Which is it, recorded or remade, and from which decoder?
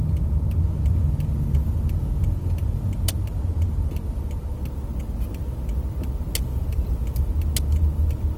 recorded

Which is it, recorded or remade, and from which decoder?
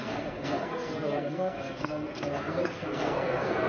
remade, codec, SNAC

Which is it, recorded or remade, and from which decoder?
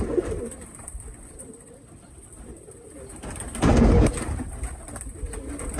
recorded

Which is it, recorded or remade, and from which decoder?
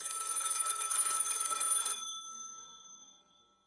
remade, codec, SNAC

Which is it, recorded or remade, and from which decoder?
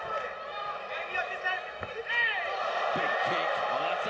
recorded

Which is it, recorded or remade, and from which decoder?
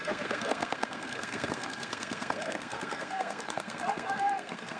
remade, codec, SNAC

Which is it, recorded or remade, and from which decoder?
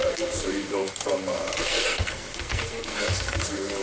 remade, codec, SNAC